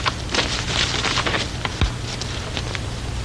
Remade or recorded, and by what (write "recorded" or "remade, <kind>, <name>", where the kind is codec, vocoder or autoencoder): recorded